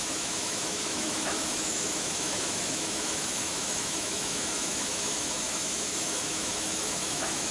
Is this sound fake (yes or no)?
yes